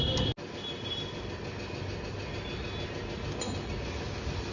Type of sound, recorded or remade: recorded